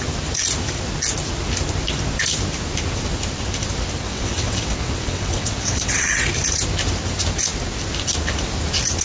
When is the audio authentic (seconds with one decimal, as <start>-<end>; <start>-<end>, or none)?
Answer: 0.0-4.0; 6.3-9.0